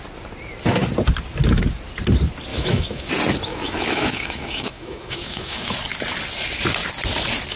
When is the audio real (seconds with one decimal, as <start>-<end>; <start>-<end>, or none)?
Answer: 0.0-2.5; 3.1-3.5; 5.7-7.6